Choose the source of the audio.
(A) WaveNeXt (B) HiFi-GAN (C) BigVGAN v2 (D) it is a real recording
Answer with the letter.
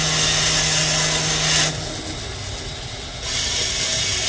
D